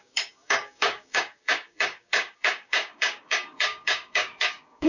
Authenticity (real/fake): fake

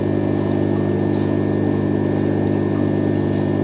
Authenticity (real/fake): real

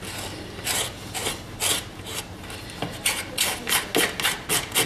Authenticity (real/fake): real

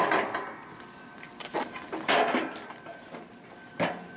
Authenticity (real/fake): real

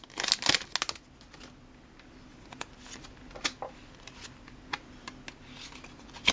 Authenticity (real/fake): real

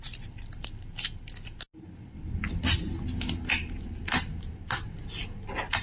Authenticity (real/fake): real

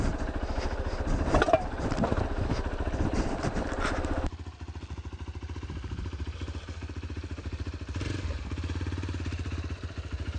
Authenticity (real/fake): real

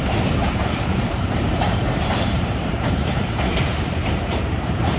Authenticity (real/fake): fake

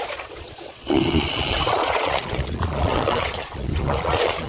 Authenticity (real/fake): fake